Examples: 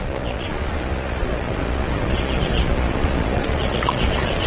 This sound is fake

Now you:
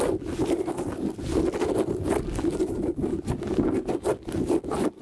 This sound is real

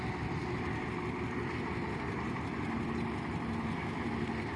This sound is real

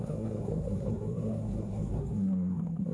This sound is fake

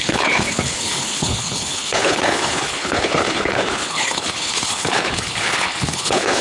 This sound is fake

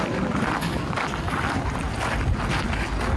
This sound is real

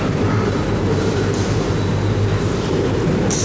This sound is fake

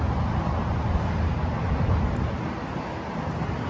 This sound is real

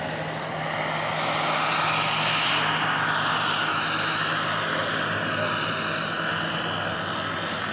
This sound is real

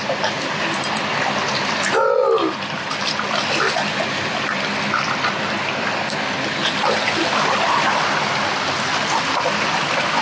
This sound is real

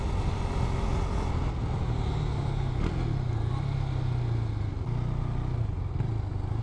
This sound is real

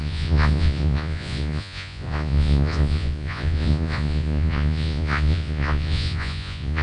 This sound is fake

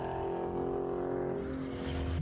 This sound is real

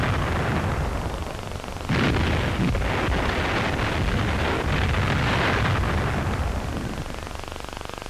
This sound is real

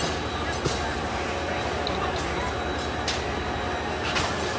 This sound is real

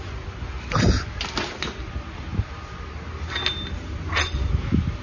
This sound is real